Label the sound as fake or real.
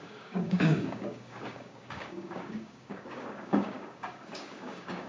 fake